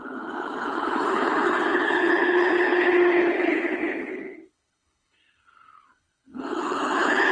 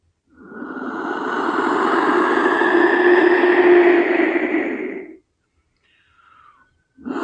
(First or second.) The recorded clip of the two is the second